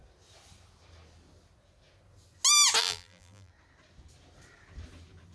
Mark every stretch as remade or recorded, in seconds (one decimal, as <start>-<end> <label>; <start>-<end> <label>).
0.0-2.8 recorded; 2.8-3.5 remade; 3.5-5.3 recorded